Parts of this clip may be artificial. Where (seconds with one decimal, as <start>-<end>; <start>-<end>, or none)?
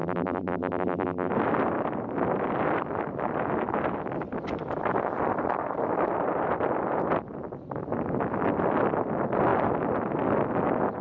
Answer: 0.0-1.3